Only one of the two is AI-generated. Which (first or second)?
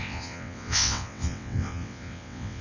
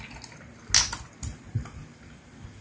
first